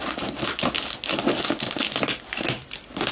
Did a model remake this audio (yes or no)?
yes